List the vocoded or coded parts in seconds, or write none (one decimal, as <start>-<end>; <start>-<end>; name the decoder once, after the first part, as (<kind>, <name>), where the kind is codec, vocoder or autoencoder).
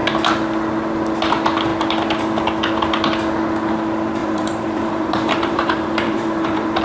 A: 4.2-6.8 (vocoder, BigVGAN v2)